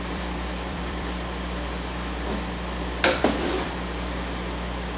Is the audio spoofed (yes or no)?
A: yes